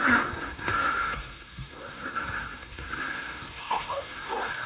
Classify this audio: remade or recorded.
remade